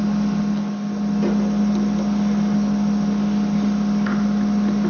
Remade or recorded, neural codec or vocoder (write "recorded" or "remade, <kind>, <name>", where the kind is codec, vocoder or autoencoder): recorded